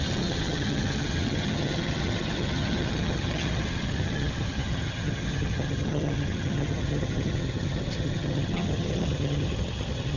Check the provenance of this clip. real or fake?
fake